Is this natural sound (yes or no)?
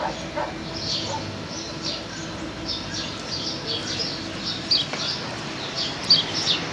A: yes